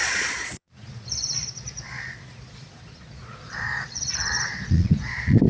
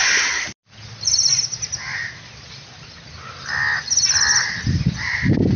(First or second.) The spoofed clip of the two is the first